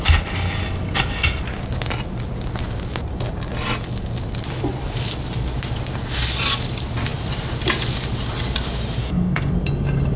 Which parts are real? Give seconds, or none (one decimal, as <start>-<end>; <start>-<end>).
0.0-9.0; 9.5-10.2